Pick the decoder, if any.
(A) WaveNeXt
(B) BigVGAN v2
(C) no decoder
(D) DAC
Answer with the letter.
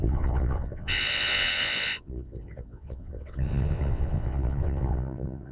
A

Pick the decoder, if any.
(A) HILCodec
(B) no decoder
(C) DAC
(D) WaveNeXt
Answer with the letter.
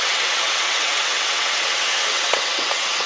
D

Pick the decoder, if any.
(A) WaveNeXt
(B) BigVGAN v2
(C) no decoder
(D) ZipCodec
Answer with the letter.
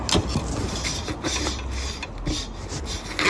C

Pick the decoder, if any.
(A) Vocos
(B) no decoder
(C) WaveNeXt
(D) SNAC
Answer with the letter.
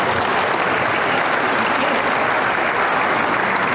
B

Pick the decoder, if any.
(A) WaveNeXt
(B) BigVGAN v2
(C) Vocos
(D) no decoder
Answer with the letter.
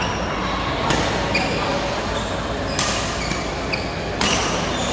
D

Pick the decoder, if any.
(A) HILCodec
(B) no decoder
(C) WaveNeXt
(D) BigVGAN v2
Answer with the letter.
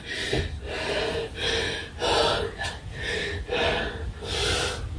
B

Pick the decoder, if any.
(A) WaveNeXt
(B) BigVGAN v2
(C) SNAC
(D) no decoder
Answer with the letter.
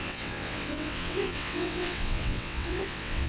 A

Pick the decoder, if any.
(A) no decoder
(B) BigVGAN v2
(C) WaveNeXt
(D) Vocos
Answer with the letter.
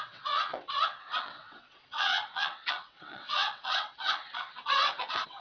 C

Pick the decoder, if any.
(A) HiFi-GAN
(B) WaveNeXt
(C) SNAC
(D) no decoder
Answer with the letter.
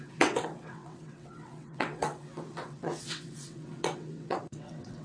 B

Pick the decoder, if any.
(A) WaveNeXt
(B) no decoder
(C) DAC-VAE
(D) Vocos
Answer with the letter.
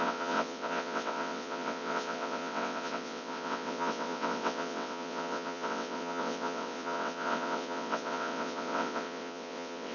A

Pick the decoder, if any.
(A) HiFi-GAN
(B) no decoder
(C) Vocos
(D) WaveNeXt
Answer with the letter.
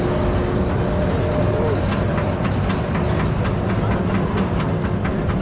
B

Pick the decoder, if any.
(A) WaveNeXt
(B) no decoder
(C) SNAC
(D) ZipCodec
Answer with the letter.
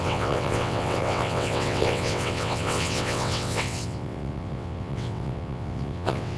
A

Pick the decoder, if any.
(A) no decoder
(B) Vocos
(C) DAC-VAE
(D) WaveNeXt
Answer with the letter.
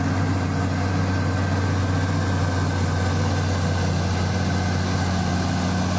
A